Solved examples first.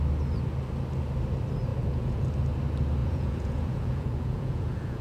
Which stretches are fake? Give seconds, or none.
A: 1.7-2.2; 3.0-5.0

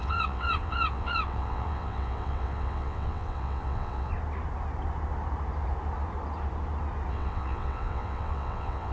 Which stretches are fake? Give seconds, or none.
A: 0.0-4.1; 7.1-8.9

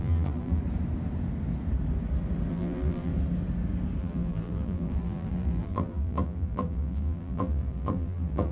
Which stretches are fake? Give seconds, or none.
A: 0.0-0.6; 2.5-3.1; 4.0-8.5

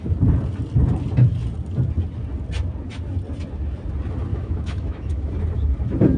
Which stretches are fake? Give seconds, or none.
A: 4.3-5.3

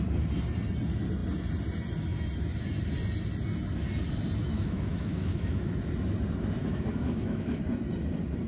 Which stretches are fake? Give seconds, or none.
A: 4.4-5.7; 6.6-7.6

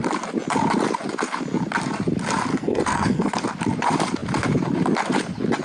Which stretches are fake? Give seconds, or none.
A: 2.5-3.3

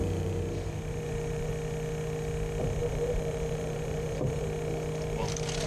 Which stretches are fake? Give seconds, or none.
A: 0.0-1.5; 2.8-4.4

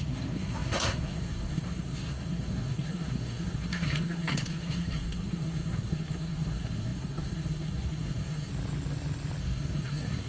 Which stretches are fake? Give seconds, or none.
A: 0.0-8.5; 9.4-10.3